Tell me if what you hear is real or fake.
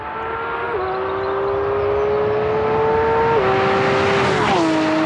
real